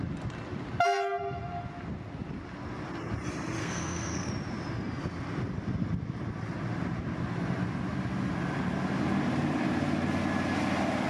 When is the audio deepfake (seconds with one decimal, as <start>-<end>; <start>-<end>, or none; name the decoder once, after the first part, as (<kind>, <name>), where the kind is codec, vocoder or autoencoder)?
3.6-4.3 (codec, SNAC)